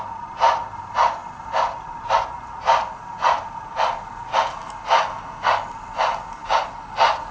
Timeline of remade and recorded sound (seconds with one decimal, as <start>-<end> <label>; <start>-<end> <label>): 0.0-7.3 recorded